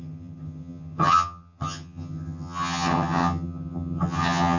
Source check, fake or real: fake